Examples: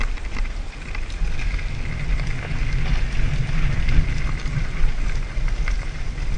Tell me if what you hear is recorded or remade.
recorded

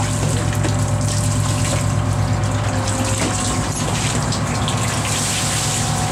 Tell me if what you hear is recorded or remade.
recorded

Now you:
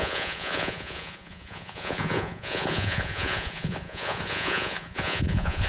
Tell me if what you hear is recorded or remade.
remade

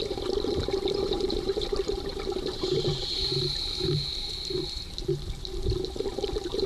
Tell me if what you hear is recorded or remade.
remade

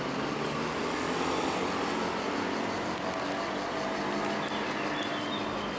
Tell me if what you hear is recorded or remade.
recorded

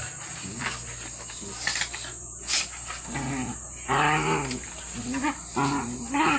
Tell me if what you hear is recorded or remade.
recorded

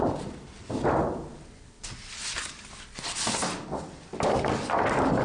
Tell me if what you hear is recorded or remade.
recorded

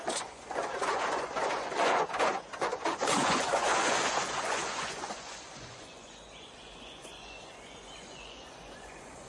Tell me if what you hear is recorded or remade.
remade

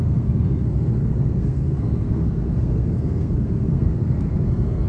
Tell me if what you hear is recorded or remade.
remade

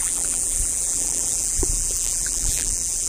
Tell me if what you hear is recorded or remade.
remade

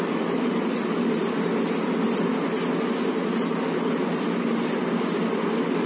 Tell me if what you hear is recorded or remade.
recorded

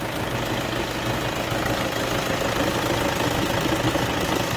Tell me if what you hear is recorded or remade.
recorded